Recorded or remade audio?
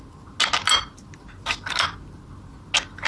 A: recorded